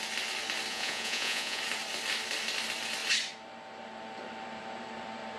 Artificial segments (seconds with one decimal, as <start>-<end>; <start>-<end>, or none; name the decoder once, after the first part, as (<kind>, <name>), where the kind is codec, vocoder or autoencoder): 0.7-1.6 (vocoder, Vocos)